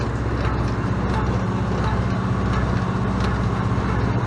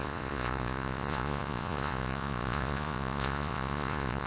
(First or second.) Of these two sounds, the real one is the first